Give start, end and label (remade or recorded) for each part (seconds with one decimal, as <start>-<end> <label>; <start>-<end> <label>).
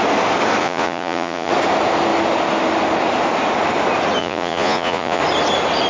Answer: 0.0-0.6 recorded; 0.6-1.5 remade; 1.5-4.2 recorded; 4.2-5.2 remade; 5.2-5.9 recorded